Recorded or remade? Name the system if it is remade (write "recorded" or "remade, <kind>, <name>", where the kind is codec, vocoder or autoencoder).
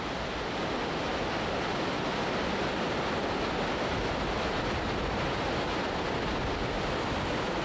recorded